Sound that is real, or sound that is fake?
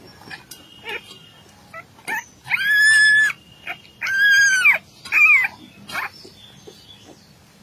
real